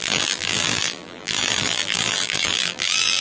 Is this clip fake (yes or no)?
yes